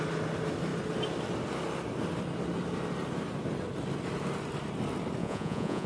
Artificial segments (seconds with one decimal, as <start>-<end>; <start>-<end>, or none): 5.2-5.9